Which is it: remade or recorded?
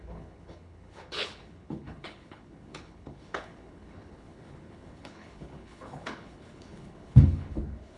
remade